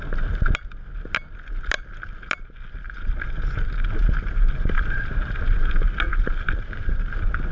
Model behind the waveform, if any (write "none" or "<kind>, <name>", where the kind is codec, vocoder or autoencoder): none